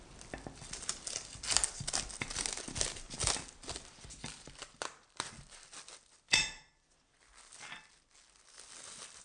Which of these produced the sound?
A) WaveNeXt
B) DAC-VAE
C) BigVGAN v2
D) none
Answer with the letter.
D